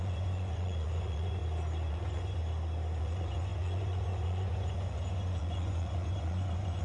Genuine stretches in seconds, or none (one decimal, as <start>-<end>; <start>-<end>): 1.4-1.9; 2.4-3.0